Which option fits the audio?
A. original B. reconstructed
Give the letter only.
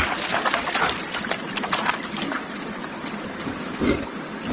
A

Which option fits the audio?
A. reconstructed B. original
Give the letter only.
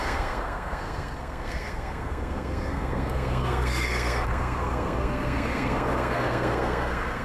A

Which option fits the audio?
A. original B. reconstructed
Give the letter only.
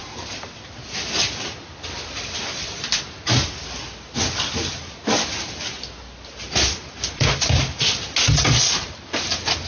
A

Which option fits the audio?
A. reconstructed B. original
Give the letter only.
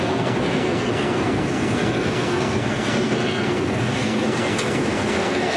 A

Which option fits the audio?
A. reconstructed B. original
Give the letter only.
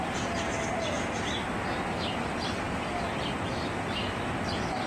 A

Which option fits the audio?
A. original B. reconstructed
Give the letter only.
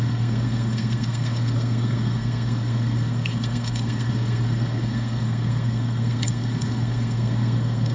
B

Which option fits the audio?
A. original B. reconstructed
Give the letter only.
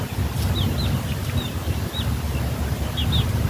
A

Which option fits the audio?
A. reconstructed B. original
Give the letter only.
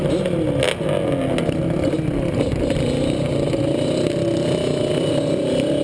B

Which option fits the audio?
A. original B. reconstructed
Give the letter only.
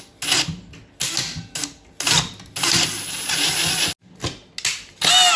A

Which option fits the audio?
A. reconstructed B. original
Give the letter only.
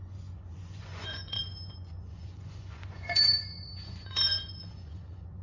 A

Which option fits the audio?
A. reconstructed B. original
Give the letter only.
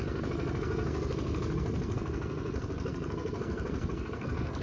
A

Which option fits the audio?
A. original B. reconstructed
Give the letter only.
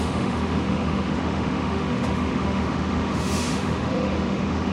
B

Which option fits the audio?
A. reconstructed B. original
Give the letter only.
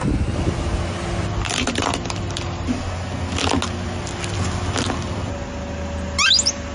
B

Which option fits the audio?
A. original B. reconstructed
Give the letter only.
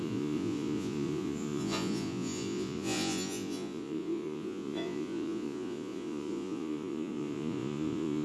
B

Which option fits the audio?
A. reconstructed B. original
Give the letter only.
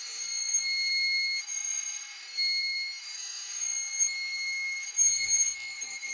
A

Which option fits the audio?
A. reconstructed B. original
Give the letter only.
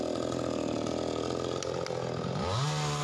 B